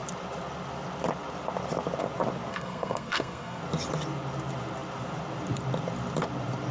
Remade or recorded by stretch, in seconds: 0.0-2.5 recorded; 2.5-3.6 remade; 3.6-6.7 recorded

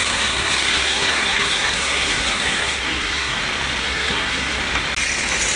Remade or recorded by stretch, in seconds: 0.0-3.4 remade; 3.4-3.8 recorded; 3.8-4.6 remade; 4.6-5.6 recorded

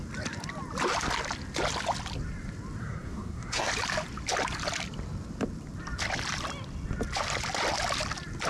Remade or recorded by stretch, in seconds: 0.0-2.8 recorded; 2.8-3.7 remade; 3.7-8.5 recorded

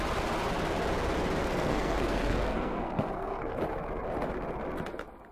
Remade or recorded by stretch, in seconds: 0.0-1.4 recorded; 1.4-3.6 remade; 3.6-5.3 recorded